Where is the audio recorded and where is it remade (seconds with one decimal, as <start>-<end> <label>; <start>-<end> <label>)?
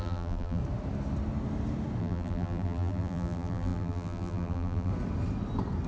0.0-0.6 remade; 0.6-2.0 recorded; 2.0-4.9 remade; 4.9-5.9 recorded